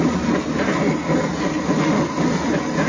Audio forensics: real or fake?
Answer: real